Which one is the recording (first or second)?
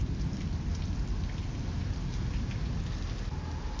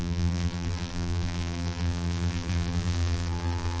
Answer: first